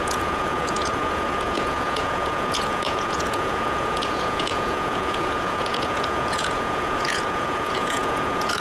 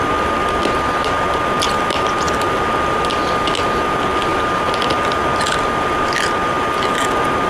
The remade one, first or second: first